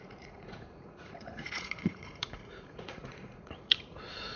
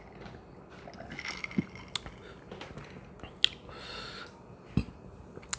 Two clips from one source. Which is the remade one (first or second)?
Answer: first